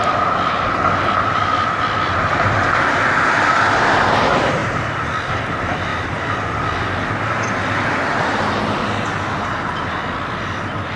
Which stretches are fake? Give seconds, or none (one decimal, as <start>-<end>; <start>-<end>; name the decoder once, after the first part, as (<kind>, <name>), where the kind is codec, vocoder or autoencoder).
none